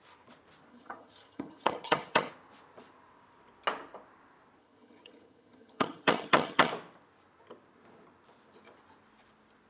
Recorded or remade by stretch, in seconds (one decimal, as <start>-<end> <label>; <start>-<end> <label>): 0.0-0.7 recorded; 0.7-2.3 remade; 2.3-4.6 recorded; 4.6-6.7 remade; 6.7-9.7 recorded

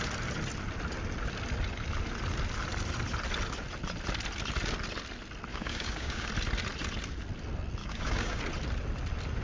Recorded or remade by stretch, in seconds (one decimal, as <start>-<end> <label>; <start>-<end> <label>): 0.0-5.5 recorded; 5.5-6.3 remade; 6.3-7.8 recorded; 7.8-8.4 remade; 8.4-9.4 recorded